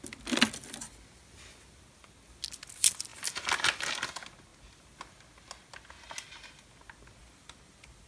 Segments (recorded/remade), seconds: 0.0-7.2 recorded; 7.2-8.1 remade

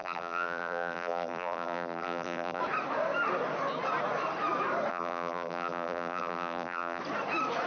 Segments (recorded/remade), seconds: 0.0-2.6 remade; 2.6-4.9 recorded; 4.9-7.0 remade; 7.0-7.7 recorded

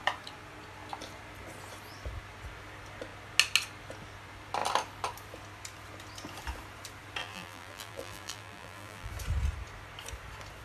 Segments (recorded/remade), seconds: 0.0-7.2 recorded; 7.2-9.1 remade; 9.1-10.6 recorded